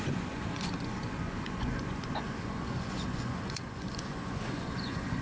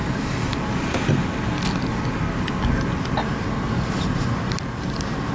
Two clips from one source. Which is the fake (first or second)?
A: first